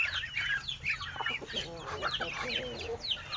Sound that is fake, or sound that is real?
real